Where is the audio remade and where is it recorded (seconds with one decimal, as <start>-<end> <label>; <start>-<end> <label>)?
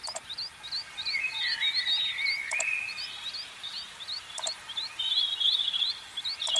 0.0-6.6 recorded